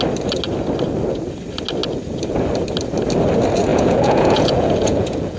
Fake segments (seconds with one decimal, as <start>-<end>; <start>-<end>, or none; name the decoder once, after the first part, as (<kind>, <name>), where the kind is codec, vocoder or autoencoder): 3.7-5.4 (vocoder, Vocos)